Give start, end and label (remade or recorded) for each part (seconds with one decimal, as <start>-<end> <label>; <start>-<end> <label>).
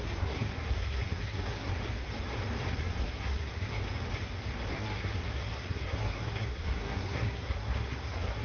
0.0-1.7 remade; 1.7-2.7 recorded; 2.7-3.8 remade; 3.8-4.7 recorded; 4.7-8.4 remade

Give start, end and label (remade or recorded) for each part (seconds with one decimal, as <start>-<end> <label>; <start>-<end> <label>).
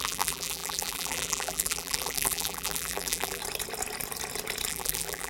0.0-3.4 remade; 3.4-4.7 recorded; 4.7-5.3 remade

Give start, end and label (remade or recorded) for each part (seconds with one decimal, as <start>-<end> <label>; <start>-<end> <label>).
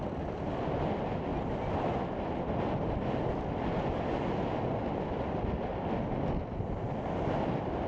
0.0-7.9 recorded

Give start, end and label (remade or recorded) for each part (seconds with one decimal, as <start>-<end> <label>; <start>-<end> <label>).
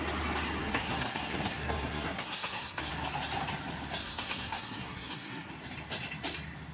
0.0-0.6 recorded; 0.6-2.9 remade; 2.9-4.0 recorded; 4.0-5.5 remade; 5.5-6.7 recorded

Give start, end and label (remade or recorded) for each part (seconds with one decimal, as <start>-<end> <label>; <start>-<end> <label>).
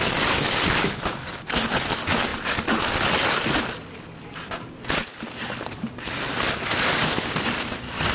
0.0-8.1 recorded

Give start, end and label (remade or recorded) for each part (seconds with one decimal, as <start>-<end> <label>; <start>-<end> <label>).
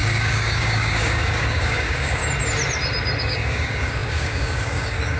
0.0-2.2 remade; 2.2-3.2 recorded; 3.2-5.2 remade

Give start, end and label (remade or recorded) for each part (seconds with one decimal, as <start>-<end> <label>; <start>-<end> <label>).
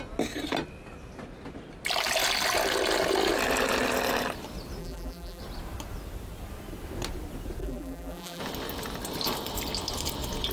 0.0-4.8 recorded; 4.8-5.4 remade; 5.4-7.6 recorded; 7.6-8.4 remade; 8.4-10.5 recorded